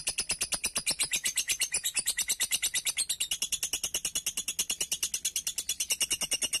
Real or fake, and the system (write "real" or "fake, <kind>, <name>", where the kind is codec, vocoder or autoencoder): real